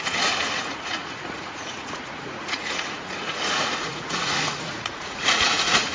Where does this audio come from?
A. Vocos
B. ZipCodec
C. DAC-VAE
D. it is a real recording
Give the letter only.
A